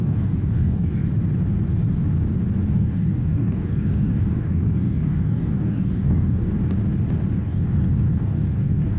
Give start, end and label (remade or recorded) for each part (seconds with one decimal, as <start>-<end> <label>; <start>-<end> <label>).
0.0-1.1 remade; 1.1-2.7 recorded; 2.7-6.5 remade; 6.5-7.4 recorded; 7.4-9.0 remade

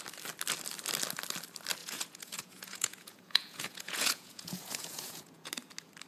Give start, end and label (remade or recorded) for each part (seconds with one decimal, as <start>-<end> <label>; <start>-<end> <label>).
0.0-1.8 recorded; 1.8-5.5 remade; 5.5-6.1 recorded

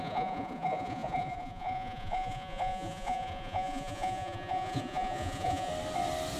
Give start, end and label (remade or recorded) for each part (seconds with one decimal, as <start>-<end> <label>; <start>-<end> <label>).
0.0-5.7 remade; 5.7-6.4 recorded

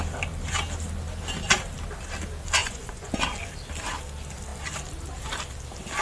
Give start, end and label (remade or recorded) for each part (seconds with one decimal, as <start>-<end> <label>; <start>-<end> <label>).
0.0-2.6 recorded; 2.6-3.1 remade; 3.1-6.0 recorded